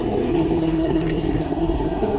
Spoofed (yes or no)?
yes